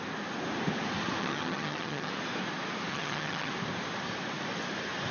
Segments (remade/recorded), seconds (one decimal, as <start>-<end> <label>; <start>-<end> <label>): 0.0-1.2 recorded; 1.2-2.1 remade; 2.1-2.9 recorded; 2.9-3.5 remade; 3.5-5.1 recorded